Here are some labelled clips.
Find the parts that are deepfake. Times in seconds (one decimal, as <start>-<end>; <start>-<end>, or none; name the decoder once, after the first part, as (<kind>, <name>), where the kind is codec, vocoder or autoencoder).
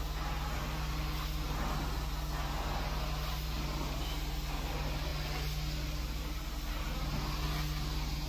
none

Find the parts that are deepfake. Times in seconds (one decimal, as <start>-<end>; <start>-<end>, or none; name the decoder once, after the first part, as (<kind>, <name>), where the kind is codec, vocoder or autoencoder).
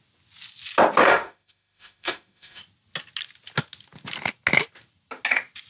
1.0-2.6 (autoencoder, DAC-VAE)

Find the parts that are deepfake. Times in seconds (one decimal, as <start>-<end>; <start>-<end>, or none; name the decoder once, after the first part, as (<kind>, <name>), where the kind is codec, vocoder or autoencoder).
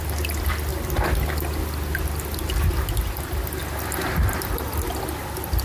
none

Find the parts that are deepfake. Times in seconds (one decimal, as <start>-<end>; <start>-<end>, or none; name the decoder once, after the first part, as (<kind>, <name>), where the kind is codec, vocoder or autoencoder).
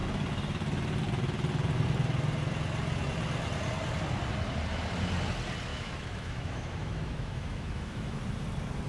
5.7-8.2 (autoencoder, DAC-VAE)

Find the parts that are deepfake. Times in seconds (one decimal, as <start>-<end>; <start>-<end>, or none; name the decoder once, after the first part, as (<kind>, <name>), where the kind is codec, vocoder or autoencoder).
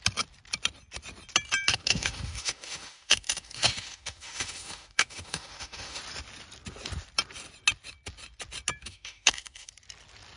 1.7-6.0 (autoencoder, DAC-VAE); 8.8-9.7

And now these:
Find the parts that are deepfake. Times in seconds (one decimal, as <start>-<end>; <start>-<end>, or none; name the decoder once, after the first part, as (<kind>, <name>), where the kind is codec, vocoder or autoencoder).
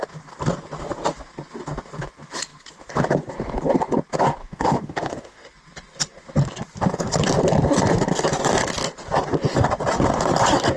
4.4-5.5 (autoencoder, DAC-VAE)